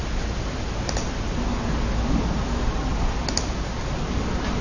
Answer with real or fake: real